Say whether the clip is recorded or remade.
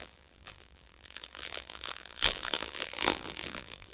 remade